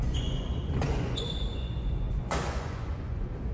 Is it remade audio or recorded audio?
remade